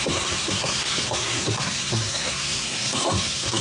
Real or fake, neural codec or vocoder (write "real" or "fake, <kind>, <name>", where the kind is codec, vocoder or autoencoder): fake, codec, SNAC